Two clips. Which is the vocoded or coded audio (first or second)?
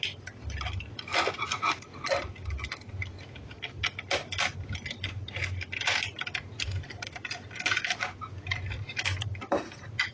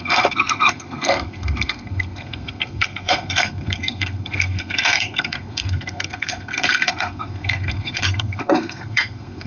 second